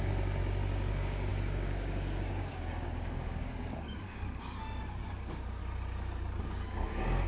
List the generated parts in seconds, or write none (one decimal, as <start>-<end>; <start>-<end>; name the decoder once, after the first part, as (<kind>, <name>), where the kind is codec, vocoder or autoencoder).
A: 0.0-0.4 (codec, DAC); 0.9-5.6; 6.4-7.3